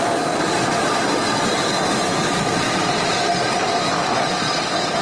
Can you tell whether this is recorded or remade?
remade